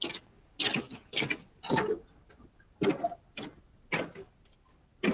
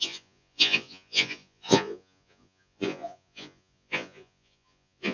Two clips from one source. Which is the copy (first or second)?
second